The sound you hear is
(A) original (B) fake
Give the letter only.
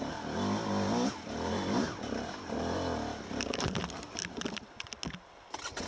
A